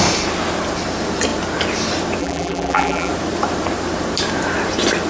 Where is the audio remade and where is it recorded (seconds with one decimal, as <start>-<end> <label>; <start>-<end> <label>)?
0.0-2.2 recorded; 2.2-3.1 remade; 3.1-5.1 recorded